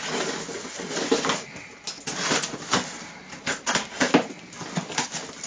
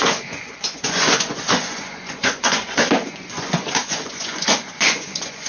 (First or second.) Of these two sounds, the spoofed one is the second